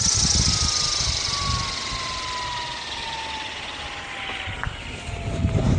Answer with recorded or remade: recorded